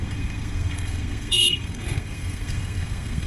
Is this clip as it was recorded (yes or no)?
no